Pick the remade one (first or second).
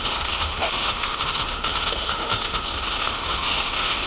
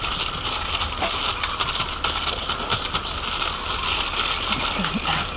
first